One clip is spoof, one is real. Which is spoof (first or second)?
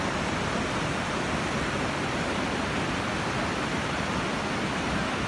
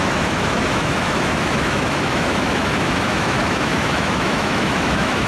second